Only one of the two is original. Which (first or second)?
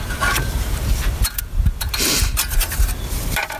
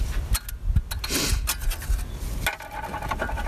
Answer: second